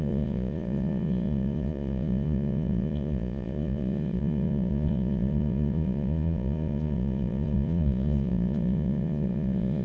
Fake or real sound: fake